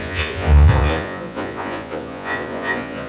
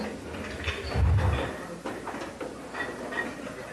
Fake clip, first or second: first